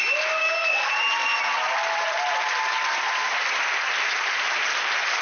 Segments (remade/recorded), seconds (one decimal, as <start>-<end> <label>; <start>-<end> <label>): 0.0-0.4 recorded; 0.4-0.9 remade; 0.9-5.2 recorded